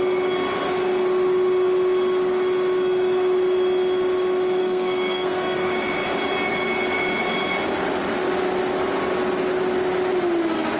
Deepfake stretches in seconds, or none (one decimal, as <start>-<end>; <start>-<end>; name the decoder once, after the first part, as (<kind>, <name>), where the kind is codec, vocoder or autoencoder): 4.6-5.7 (codec, SNAC)